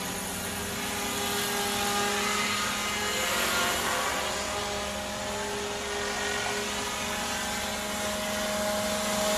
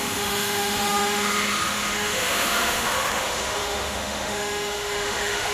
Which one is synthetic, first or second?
second